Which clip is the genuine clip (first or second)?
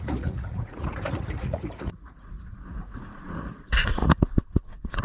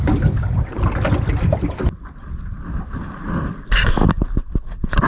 second